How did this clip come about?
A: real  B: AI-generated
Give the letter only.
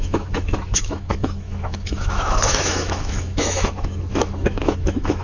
B